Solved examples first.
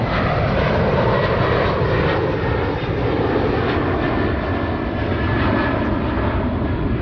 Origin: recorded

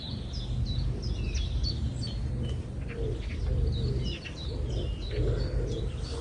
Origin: recorded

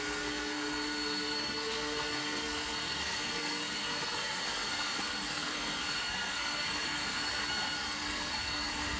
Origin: remade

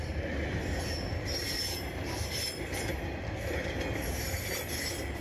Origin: recorded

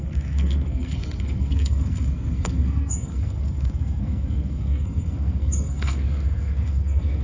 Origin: remade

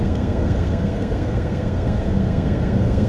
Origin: remade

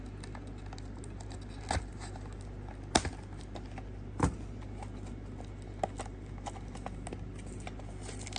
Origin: recorded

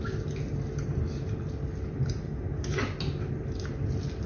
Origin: recorded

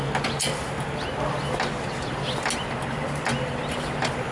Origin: recorded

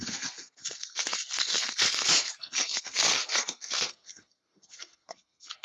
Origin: remade